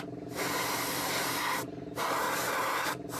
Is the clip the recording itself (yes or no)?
no